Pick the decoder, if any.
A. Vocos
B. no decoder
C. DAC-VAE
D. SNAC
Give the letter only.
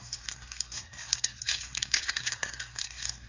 D